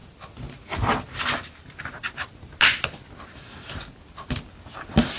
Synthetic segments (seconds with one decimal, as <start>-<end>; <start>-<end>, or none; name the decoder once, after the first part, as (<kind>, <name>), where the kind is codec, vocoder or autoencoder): none